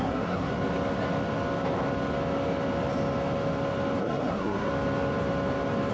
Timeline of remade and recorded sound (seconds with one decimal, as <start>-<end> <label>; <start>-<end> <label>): 0.0-0.5 remade; 0.5-4.0 recorded; 4.0-4.7 remade; 4.7-5.9 recorded